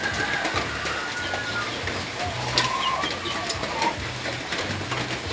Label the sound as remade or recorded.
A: recorded